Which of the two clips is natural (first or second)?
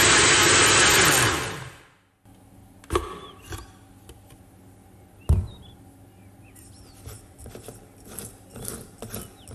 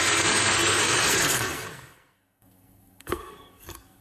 first